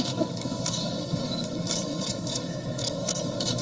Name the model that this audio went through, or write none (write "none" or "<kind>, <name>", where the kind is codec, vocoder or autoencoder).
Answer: autoencoder, DAC-VAE